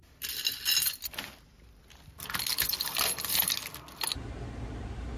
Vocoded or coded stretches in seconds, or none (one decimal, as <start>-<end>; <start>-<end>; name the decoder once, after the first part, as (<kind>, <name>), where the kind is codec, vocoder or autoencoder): none